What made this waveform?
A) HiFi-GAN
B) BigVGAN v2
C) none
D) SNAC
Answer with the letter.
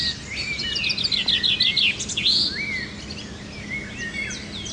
C